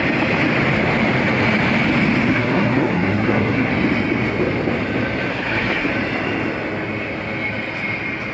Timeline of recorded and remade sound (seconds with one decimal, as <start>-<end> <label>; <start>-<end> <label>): 0.0-2.3 recorded; 2.3-3.7 remade; 3.7-5.3 recorded; 5.3-5.9 remade; 5.9-8.3 recorded